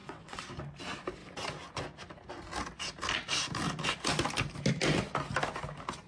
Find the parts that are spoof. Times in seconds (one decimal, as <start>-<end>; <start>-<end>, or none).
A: 0.0-0.6

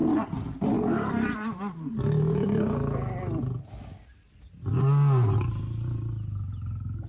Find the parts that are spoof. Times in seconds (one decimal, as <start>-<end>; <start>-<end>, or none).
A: 0.0-3.4

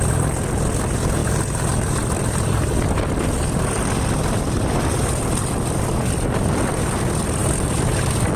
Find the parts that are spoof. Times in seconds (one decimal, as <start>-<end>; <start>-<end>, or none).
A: 1.2-5.8; 7.4-8.4

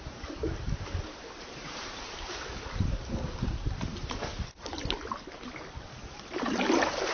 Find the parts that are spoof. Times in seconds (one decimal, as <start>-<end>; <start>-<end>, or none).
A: 0.0-4.2; 6.5-7.1